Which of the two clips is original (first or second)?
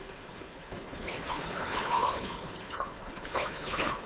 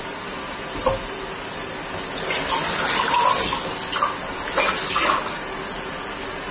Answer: second